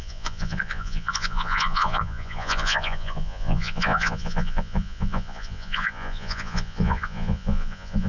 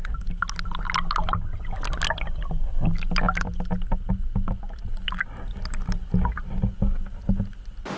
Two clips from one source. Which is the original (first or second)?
second